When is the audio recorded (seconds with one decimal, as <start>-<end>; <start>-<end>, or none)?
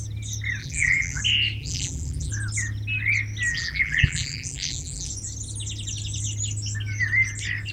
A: 0.0-0.6; 1.2-1.6; 2.3-3.5; 5.1-7.7